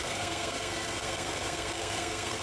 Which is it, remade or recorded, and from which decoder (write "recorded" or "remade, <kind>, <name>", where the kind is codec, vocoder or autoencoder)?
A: remade, codec, SNAC